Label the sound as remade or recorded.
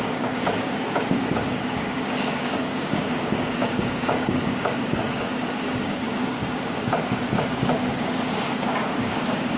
remade